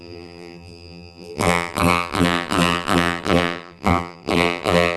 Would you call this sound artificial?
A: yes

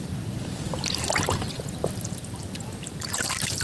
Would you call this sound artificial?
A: yes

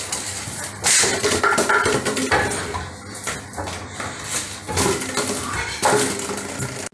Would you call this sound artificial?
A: no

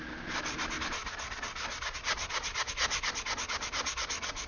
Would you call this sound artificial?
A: no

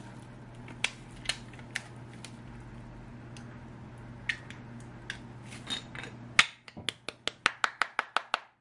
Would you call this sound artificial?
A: no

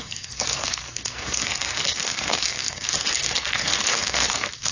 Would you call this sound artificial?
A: yes